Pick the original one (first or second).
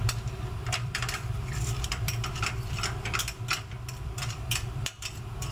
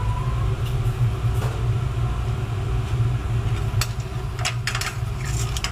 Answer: second